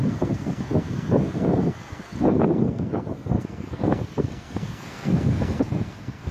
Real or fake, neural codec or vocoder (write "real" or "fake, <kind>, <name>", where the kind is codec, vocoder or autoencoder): fake, codec, SNAC